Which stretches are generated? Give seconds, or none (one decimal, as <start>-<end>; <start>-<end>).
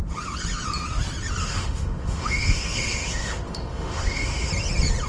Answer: 1.4-4.5